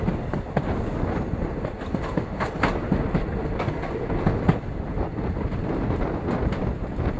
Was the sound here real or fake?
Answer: real